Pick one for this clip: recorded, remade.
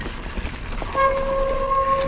recorded